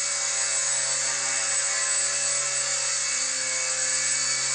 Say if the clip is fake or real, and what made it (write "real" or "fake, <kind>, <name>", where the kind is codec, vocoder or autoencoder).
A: real